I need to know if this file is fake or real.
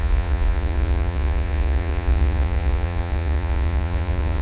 fake